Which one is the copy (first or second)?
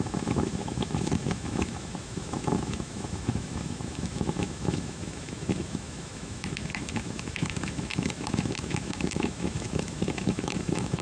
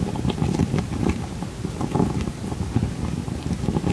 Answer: first